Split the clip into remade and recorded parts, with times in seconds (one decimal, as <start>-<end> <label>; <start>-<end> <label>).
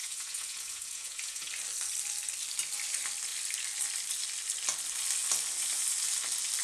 0.0-1.5 remade; 1.5-6.6 recorded